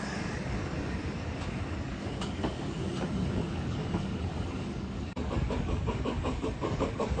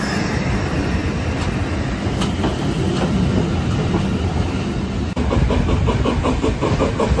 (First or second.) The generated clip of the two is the first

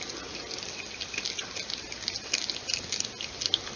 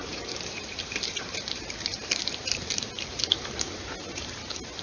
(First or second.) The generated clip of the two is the second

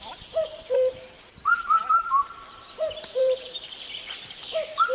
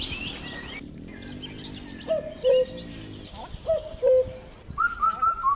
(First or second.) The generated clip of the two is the first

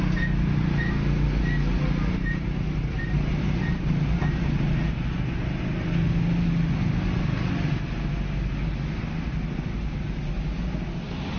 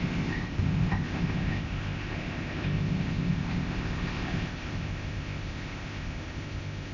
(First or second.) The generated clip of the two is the second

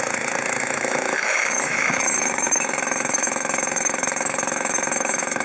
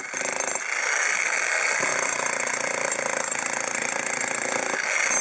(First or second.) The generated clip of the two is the first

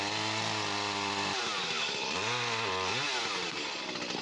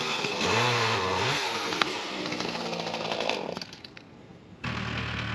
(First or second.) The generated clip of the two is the second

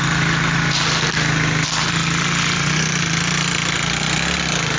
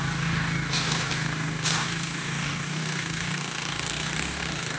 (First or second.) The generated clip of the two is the second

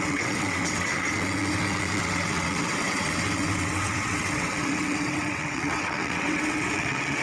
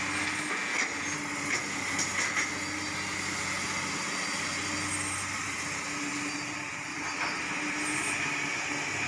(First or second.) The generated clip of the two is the first